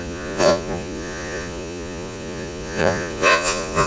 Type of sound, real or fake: fake